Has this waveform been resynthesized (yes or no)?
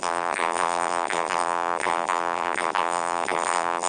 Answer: yes